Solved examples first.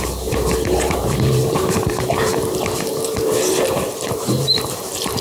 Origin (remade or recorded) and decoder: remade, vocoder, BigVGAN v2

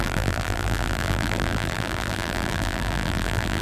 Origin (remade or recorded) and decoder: remade, vocoder, BigVGAN v2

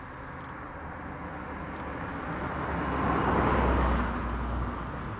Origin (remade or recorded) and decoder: recorded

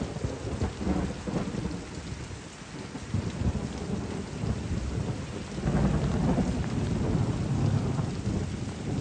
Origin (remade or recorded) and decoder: recorded